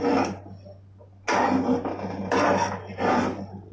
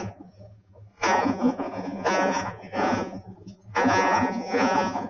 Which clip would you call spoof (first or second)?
second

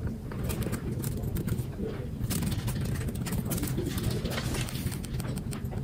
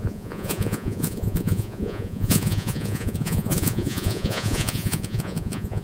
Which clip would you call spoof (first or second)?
second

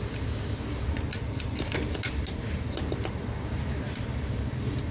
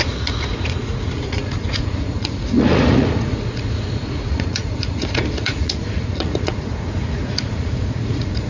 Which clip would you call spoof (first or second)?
second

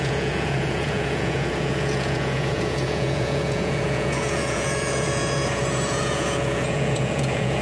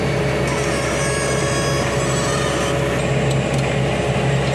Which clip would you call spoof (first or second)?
first